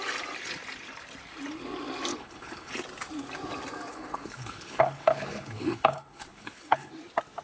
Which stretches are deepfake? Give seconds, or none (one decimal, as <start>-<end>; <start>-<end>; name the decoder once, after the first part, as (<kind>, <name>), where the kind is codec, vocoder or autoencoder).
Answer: 2.1-2.7 (codec, HILCodec); 3.9-6.9